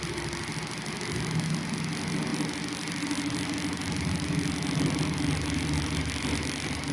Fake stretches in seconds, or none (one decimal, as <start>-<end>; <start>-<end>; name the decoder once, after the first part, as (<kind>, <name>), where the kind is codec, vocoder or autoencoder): none